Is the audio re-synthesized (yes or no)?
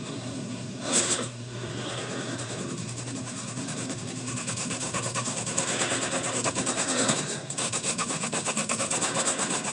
yes